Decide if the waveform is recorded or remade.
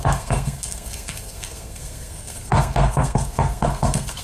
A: remade